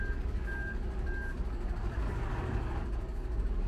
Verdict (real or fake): fake